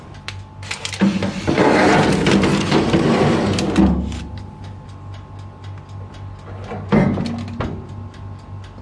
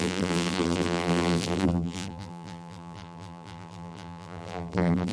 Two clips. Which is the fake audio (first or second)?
second